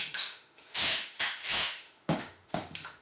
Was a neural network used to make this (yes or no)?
yes